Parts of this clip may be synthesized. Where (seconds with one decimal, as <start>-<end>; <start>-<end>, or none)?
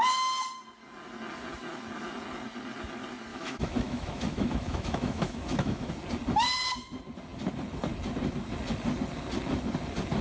3.3-5.9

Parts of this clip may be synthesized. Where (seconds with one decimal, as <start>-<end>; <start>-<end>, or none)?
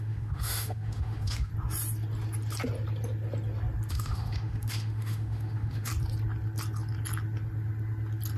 0.0-1.5; 3.9-5.9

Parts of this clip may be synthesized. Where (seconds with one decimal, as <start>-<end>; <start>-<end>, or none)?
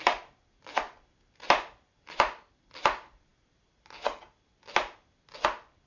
none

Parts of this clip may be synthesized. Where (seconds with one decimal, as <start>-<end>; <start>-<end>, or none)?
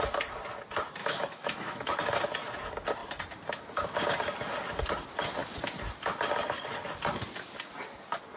1.0-1.9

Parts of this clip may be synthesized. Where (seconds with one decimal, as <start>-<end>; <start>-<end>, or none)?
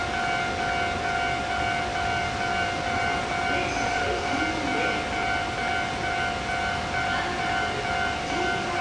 3.9-4.4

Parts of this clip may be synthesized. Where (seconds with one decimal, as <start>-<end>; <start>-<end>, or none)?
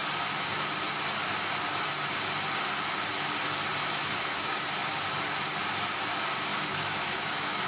3.8-4.6; 6.5-7.7